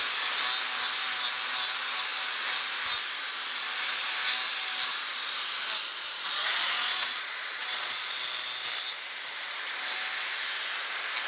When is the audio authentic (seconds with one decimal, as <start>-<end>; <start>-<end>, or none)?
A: 0.0-5.9; 8.2-11.3